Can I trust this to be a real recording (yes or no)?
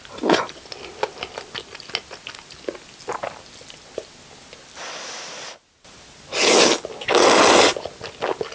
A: yes